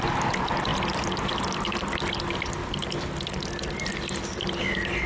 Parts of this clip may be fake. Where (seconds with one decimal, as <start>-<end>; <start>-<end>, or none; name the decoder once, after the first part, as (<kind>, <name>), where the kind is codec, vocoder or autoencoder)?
none